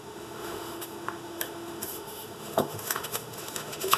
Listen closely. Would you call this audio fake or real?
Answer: fake